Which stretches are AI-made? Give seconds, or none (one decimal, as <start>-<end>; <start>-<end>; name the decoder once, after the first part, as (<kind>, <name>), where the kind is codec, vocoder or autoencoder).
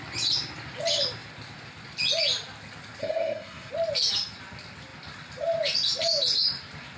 3.0-3.7 (codec, SNAC)